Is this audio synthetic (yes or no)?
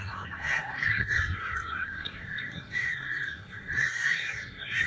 yes